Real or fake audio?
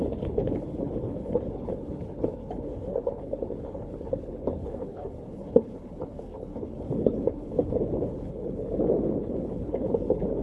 fake